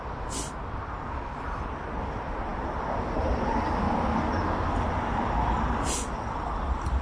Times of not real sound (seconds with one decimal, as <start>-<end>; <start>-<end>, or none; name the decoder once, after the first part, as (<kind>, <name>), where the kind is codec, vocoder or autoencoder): none